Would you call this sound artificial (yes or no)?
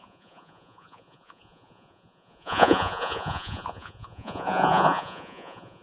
yes